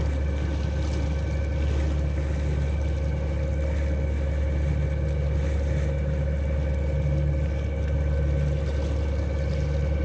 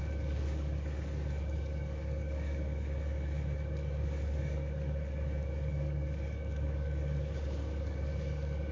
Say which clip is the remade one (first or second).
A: second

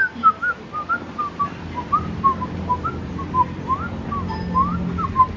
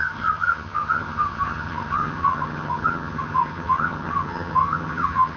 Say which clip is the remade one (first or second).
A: second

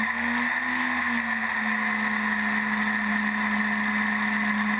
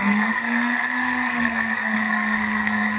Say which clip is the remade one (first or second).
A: second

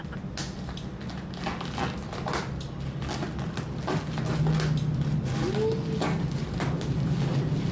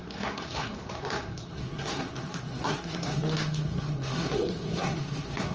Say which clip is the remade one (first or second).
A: second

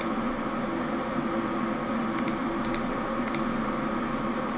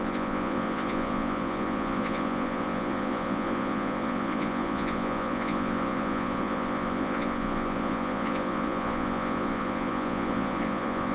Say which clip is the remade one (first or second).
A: second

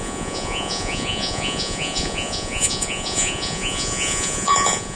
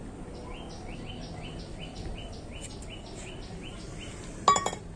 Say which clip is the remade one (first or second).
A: first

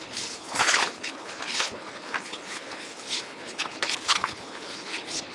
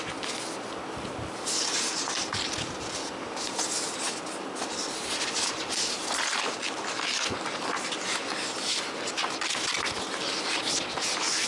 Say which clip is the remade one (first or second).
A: first